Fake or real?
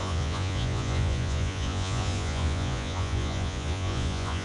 fake